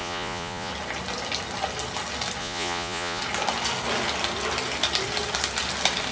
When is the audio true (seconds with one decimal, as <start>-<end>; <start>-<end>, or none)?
0.7-2.4; 3.2-6.1